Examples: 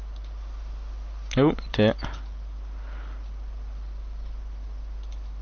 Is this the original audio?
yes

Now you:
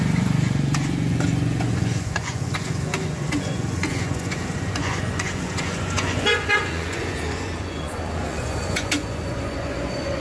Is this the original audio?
no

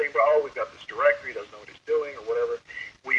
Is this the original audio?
no